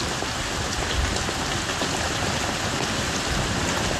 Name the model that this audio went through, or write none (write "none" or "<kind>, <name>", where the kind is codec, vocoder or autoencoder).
none